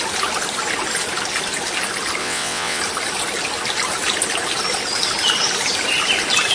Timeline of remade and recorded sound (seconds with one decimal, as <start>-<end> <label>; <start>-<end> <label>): 0.0-2.2 recorded; 2.2-2.8 remade; 2.8-6.5 recorded